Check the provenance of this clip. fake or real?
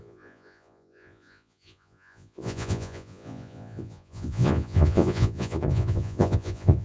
fake